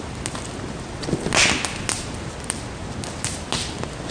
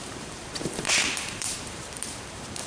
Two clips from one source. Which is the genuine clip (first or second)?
first